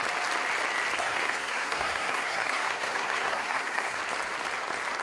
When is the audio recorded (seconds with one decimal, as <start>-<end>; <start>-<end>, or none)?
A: 0.0-1.0; 4.0-5.0